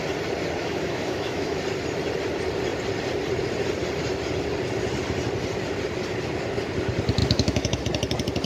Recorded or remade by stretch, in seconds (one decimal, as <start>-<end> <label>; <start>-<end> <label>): 0.0-0.6 recorded; 0.6-1.6 remade; 1.6-7.2 recorded; 7.2-7.8 remade; 7.8-8.4 recorded